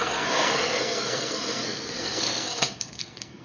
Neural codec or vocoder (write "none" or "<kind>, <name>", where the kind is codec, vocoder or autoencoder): codec, SNAC